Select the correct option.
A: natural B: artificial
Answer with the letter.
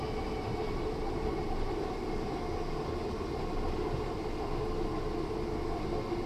A